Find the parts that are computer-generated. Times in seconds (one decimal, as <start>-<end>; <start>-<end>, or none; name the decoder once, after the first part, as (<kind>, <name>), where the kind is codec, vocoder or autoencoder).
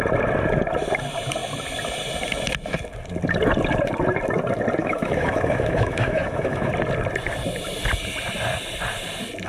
4.8-6.7 (autoencoder, DAC-VAE)